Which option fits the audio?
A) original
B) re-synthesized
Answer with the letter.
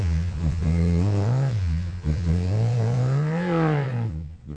B